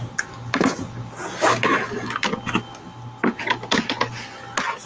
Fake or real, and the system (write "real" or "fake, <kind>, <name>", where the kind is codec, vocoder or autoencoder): real